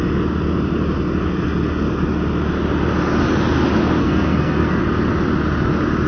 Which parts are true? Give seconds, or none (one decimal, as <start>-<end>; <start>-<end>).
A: 0.0-4.0; 4.8-6.1